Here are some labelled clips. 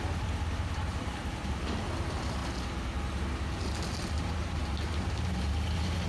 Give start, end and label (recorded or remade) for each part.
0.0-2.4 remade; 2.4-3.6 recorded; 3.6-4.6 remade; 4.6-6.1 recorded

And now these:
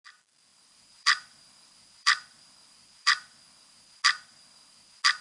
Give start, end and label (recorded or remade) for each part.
0.0-0.5 recorded; 0.5-3.6 remade; 3.6-5.2 recorded

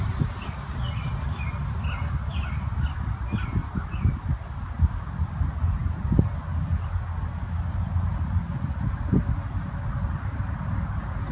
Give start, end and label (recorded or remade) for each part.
0.0-11.3 recorded

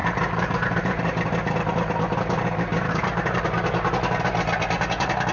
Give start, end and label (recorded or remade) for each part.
0.0-1.3 remade; 1.3-2.7 recorded; 2.7-3.4 remade; 3.4-5.3 recorded

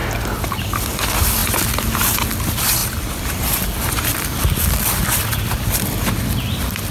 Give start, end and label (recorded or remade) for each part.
0.0-6.9 recorded

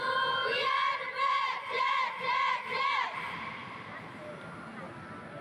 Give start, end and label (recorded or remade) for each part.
0.0-5.4 recorded

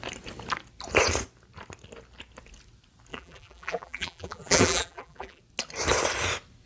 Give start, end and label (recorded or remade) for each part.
0.0-3.1 recorded; 3.1-5.4 remade; 5.4-6.7 recorded

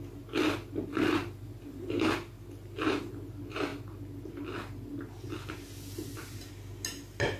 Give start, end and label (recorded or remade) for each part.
0.0-7.4 recorded